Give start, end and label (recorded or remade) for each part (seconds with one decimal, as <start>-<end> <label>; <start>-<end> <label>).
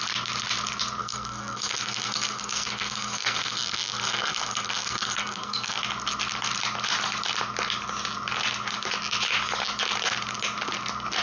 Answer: 0.0-1.0 recorded; 1.0-5.8 remade; 5.8-11.2 recorded